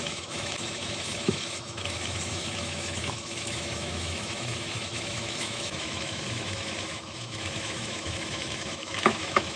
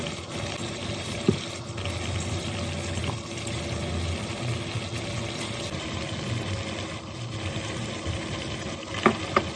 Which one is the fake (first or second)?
first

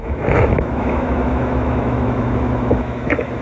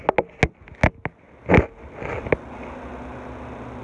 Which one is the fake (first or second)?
first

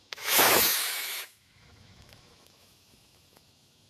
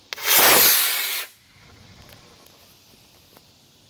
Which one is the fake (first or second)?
first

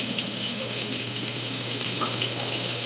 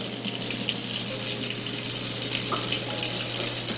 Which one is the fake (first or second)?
first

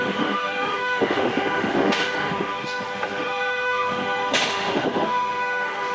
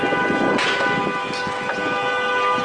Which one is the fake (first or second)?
first